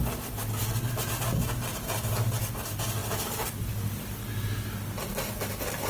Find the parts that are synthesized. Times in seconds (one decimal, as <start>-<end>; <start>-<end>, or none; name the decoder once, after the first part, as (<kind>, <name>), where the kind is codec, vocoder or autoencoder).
none